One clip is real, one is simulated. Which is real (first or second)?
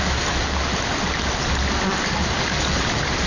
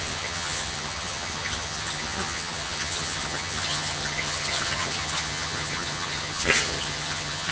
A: first